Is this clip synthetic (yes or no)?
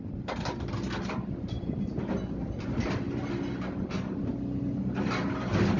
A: no